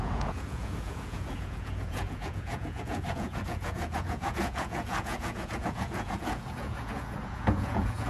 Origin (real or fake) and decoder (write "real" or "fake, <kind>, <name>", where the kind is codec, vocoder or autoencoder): fake, vocoder, Vocos